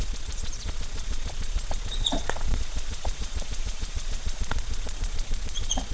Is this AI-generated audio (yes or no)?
yes